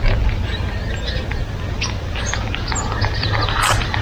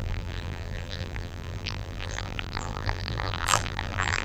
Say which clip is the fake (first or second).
second